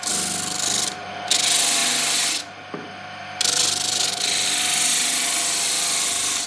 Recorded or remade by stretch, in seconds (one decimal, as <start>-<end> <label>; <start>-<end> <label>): 0.0-6.5 recorded